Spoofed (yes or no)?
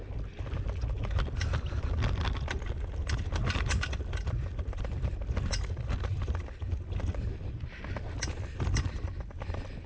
no